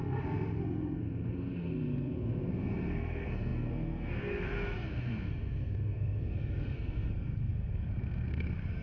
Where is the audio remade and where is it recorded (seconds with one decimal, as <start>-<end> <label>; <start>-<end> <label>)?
0.0-8.8 remade